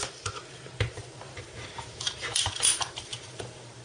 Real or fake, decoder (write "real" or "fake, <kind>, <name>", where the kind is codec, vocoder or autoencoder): fake, vocoder, BigVGAN v2